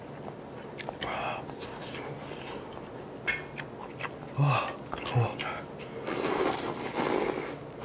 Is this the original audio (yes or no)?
yes